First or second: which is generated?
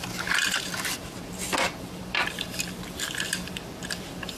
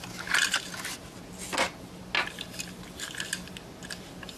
first